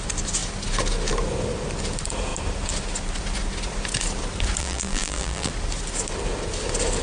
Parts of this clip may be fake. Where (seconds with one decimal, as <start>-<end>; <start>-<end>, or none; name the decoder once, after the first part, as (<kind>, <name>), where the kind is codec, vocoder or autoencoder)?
4.6-5.5 (vocoder, BigVGAN v2)

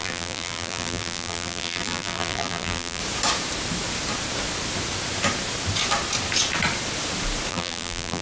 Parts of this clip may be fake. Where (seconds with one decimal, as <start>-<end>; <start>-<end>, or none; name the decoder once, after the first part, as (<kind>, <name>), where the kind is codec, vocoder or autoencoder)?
0.0-3.0 (vocoder, BigVGAN v2); 7.5-8.2

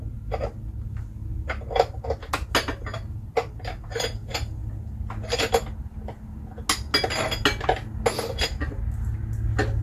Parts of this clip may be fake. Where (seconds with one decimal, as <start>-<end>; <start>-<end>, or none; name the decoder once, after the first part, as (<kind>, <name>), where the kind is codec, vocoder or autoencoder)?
none

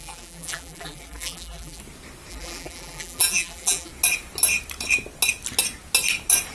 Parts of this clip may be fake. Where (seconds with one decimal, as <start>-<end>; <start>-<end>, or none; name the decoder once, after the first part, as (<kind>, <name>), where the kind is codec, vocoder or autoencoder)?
0.0-1.8 (vocoder, BigVGAN v2); 2.3-3.9

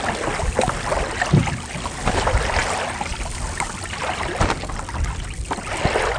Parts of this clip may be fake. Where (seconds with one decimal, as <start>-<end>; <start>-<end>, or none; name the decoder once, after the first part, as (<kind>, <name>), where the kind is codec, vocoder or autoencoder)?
none

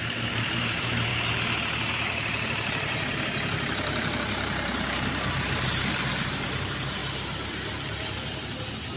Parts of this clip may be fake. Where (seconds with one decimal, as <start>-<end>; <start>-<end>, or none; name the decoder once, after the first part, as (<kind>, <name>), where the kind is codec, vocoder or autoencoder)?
0.0-1.1 (vocoder, BigVGAN v2); 1.9-7.0